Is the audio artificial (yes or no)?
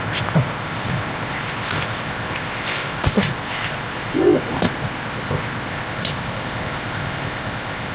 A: yes